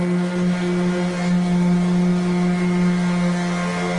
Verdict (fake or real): real